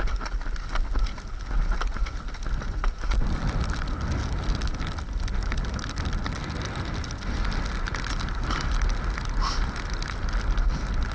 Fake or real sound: real